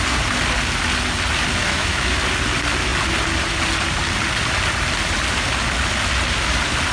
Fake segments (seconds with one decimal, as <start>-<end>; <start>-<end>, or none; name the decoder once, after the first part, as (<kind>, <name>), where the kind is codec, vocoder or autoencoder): 1.6-2.2 (autoencoder, DAC-VAE)